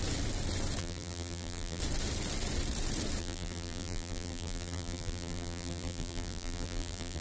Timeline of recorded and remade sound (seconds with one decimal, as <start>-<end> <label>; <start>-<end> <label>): 0.0-0.8 recorded; 0.8-1.8 remade; 1.8-3.2 recorded; 3.2-7.2 remade